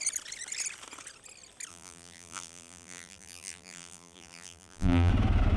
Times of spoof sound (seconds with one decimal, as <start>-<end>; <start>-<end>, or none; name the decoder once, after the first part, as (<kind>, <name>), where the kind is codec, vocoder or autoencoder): 1.7-5.1 (vocoder, BigVGAN v2)